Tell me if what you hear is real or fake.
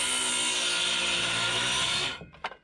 real